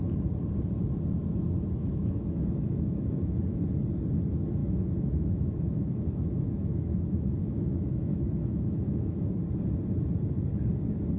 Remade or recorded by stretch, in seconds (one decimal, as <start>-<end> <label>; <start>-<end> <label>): 0.0-1.8 recorded; 1.8-3.4 remade; 3.4-4.6 recorded; 4.6-9.3 remade; 9.3-11.2 recorded